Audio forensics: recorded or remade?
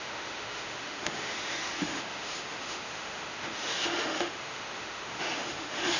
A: remade